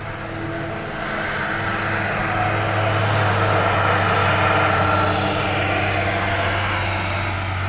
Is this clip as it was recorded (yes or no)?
yes